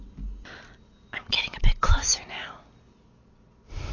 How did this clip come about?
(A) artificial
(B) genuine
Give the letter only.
B